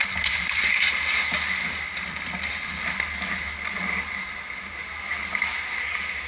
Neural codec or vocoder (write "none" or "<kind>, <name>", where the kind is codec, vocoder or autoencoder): none